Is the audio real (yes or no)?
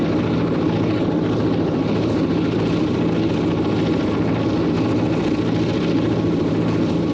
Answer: yes